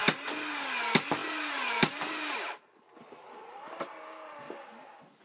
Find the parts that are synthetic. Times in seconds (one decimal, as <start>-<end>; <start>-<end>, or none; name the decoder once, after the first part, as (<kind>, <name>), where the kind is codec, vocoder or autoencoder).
none